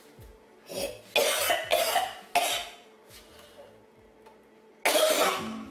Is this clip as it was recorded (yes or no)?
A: yes